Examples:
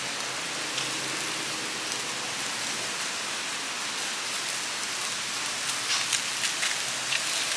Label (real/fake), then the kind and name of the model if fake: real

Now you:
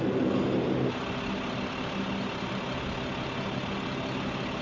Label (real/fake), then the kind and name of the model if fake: real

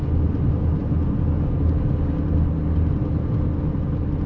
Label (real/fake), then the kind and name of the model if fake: real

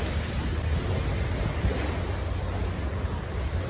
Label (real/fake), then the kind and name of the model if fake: real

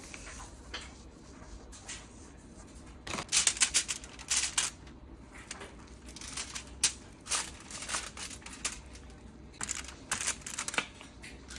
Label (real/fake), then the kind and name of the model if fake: real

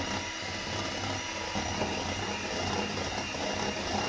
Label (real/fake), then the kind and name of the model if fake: real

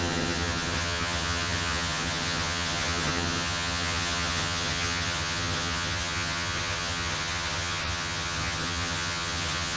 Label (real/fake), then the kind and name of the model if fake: fake, vocoder, HiFi-GAN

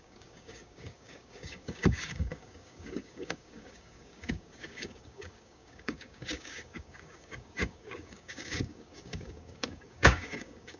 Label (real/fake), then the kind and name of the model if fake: fake, codec, DAC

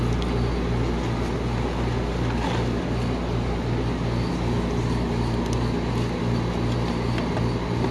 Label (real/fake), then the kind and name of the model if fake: real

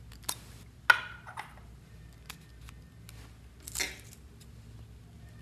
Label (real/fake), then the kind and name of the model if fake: real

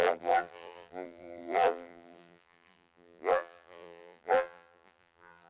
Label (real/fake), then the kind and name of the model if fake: fake, vocoder, BigVGAN v2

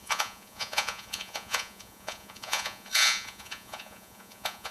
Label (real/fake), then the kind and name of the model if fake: fake, vocoder, Vocos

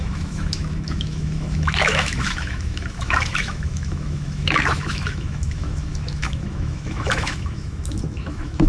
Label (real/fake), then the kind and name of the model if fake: fake, autoencoder, DAC-VAE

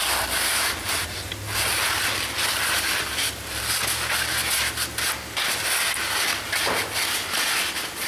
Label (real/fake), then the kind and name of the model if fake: real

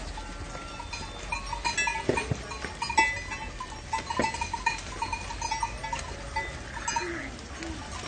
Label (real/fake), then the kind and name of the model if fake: real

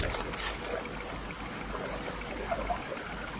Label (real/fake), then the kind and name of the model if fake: real